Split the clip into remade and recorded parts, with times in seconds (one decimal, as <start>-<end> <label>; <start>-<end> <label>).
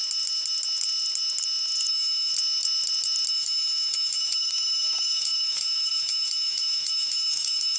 0.0-1.9 recorded; 1.9-2.3 remade; 2.3-3.3 recorded; 3.3-7.8 remade